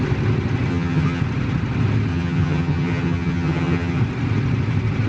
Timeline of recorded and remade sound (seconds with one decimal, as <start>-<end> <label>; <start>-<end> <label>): 0.0-0.7 recorded; 0.7-1.2 remade; 1.2-2.1 recorded; 2.1-4.0 remade; 4.0-5.1 recorded